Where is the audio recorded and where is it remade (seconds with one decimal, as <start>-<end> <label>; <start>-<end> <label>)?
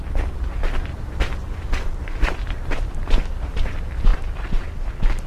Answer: 0.0-0.9 recorded; 0.9-3.1 remade; 3.1-5.3 recorded